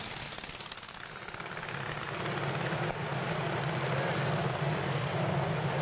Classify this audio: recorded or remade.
recorded